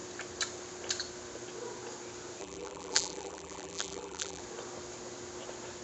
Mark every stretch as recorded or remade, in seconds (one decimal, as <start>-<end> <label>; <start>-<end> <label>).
0.0-2.4 recorded; 2.4-4.4 remade; 4.4-5.8 recorded